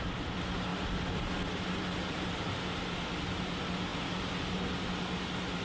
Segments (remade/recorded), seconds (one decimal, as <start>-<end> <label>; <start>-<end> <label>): 0.0-5.6 recorded